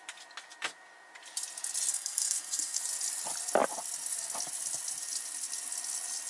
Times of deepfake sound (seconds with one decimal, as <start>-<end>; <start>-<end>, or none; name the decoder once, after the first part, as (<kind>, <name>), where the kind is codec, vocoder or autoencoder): 1.9-2.8 (codec, SNAC)